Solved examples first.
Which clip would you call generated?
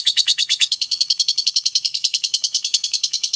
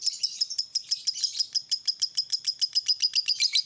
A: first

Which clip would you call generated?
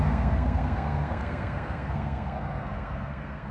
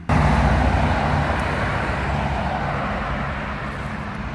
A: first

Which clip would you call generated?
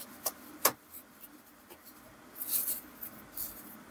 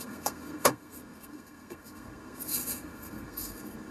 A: second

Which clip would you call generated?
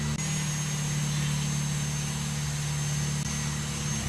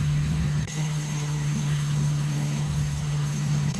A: second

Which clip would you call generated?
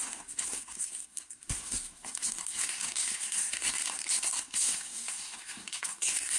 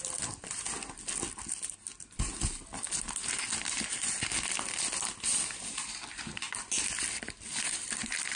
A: first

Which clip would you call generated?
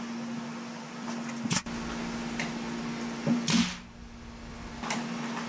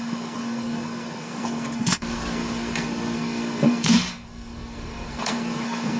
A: second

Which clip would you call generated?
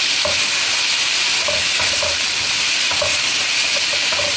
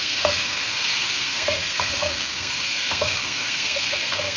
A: second